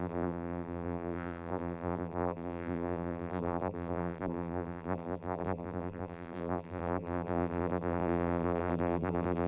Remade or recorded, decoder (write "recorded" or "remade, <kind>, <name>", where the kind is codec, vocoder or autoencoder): remade, vocoder, BigVGAN v2